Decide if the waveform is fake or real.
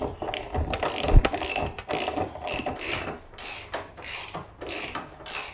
real